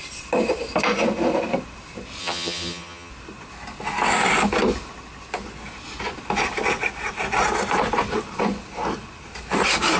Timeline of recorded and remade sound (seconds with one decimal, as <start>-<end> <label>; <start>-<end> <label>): 0.0-2.2 recorded; 2.2-3.1 remade; 3.1-10.0 recorded